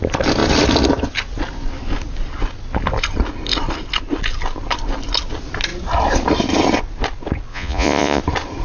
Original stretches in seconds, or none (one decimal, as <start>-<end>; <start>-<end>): 0.0-7.5; 8.2-8.6